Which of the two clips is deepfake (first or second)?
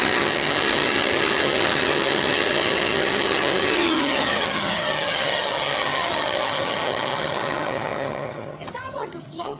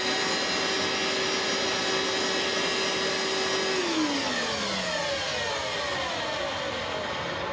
first